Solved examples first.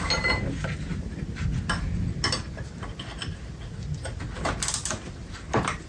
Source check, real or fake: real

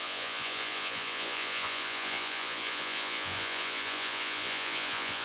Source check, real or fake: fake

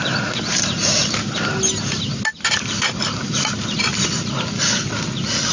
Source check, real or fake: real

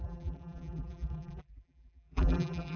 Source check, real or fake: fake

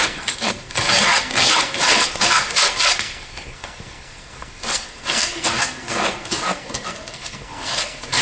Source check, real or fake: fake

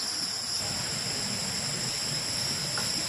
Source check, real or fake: real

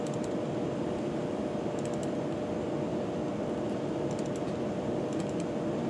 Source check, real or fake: real